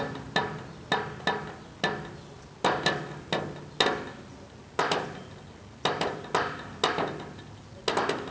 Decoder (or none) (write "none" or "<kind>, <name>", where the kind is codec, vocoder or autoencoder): none